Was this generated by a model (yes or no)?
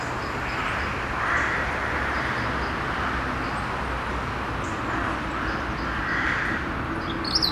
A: no